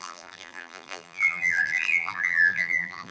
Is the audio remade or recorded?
remade